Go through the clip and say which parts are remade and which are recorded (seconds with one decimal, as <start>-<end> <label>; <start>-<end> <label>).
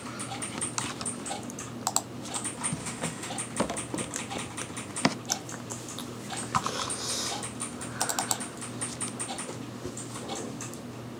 0.0-2.8 recorded; 2.8-3.3 remade; 3.3-11.2 recorded